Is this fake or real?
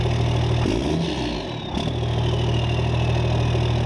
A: real